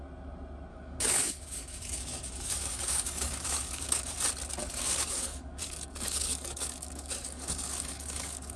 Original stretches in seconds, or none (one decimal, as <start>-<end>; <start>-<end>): 0.0-0.7; 4.1-4.6